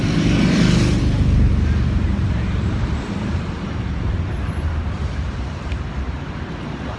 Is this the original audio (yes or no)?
no